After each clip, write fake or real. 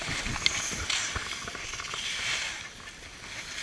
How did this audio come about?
real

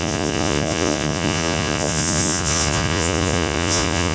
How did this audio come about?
fake